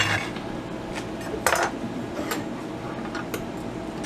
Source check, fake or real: real